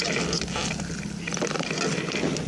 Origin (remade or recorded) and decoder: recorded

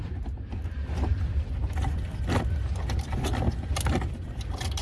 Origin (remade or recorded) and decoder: recorded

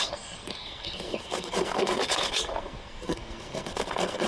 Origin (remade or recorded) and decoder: remade, codec, SNAC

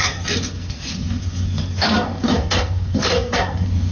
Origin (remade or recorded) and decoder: remade, codec, SNAC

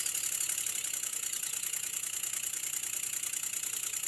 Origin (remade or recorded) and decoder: recorded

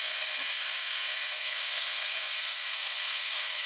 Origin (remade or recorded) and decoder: remade, codec, SNAC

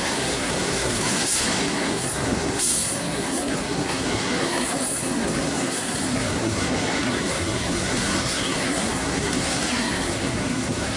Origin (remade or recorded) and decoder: remade, codec, SNAC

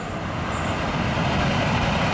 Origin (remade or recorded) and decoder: recorded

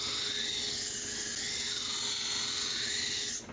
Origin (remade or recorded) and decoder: recorded